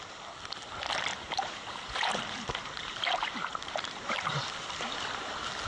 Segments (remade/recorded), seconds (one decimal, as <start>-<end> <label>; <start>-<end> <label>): 0.0-1.1 recorded; 1.1-4.5 remade; 4.5-5.7 recorded